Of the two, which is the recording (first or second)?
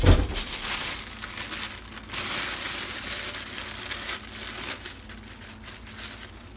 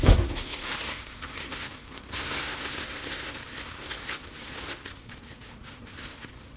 first